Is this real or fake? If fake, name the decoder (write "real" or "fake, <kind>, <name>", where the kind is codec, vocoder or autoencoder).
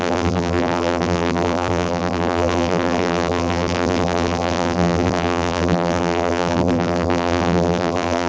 fake, vocoder, BigVGAN v2